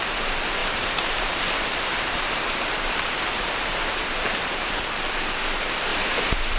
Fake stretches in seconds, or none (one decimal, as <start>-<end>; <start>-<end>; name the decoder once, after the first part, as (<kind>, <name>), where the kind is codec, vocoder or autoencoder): 0.6-4.6 (vocoder, BigVGAN v2); 5.9-6.6